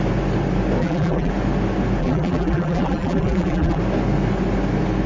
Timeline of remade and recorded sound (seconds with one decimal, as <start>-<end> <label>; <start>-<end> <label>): 0.0-0.8 recorded; 0.8-1.3 remade; 1.3-2.0 recorded; 2.0-3.8 remade; 3.8-5.1 recorded